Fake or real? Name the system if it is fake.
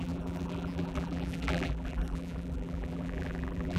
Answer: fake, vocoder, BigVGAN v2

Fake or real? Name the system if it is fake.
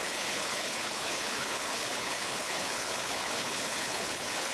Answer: fake, codec, HILCodec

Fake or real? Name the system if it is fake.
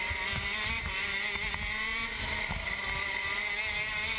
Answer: real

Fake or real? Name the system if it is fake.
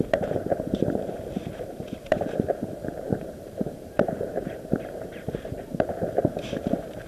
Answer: fake, vocoder, BigVGAN v2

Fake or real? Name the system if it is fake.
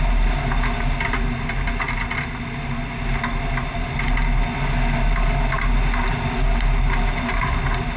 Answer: real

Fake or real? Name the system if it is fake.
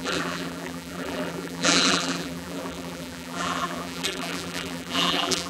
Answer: fake, vocoder, BigVGAN v2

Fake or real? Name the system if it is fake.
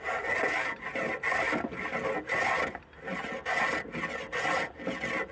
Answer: real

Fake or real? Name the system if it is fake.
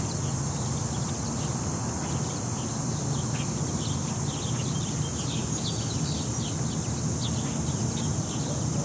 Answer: real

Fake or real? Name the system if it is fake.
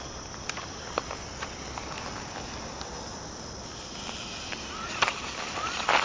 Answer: real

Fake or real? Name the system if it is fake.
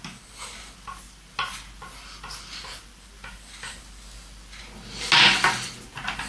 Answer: real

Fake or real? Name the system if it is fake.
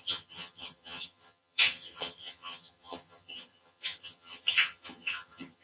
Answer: fake, vocoder, HiFi-GAN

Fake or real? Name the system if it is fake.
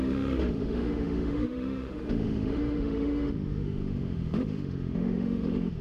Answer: fake, autoencoder, DAC-VAE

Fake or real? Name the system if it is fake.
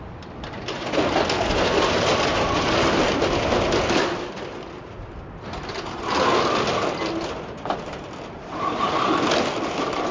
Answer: real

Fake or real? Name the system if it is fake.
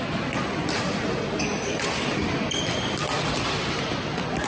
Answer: real